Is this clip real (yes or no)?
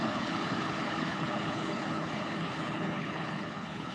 no